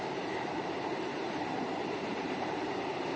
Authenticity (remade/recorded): remade